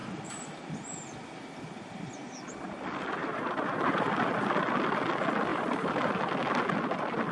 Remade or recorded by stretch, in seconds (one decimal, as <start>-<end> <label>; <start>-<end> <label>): 0.0-0.6 remade; 0.6-3.2 recorded; 3.2-4.1 remade; 4.1-5.5 recorded; 5.5-6.1 remade; 6.1-7.3 recorded